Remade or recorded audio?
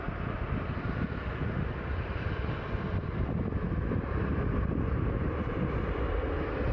recorded